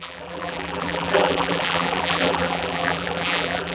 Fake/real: fake